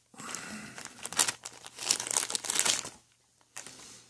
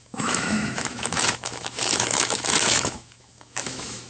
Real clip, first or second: first